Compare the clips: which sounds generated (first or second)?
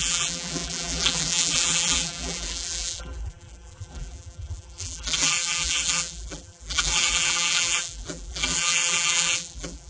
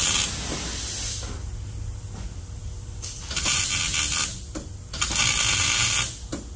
first